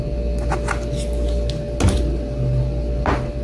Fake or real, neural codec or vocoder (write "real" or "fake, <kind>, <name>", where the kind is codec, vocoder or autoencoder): real